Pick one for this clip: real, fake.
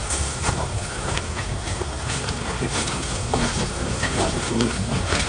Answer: fake